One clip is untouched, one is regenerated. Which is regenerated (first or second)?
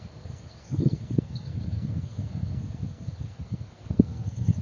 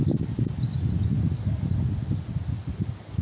first